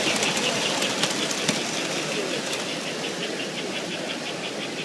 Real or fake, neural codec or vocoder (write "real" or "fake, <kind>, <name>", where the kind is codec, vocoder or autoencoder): real